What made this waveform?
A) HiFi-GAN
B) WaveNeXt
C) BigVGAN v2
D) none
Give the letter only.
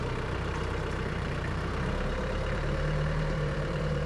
C